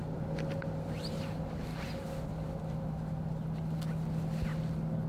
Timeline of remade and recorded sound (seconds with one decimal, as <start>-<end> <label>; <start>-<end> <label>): 0.0-5.1 recorded